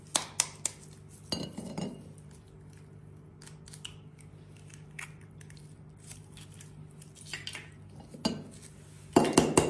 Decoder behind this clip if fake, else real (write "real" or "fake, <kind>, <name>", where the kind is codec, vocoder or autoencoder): real